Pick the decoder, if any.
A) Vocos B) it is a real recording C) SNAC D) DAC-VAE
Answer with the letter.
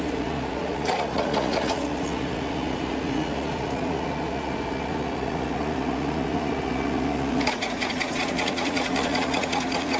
A